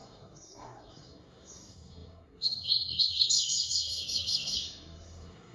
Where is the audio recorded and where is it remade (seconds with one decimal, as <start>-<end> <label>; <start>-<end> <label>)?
0.0-5.5 remade